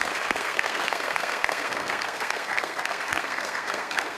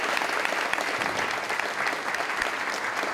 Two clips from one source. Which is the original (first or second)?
second